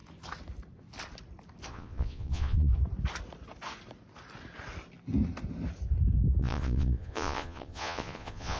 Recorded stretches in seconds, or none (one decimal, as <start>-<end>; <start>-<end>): 0.0-1.7; 2.7-6.4